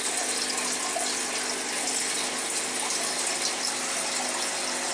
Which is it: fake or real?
real